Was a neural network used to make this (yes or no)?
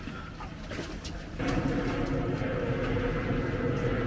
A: no